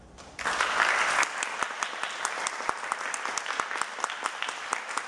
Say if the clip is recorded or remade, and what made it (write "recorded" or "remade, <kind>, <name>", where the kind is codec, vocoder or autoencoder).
recorded